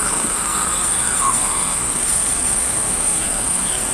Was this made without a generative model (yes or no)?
no